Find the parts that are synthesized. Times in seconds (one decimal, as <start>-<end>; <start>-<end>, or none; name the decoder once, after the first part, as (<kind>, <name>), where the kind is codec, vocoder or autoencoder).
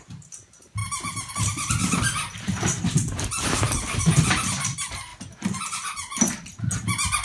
0.8-1.3 (vocoder, BigVGAN v2); 1.8-2.3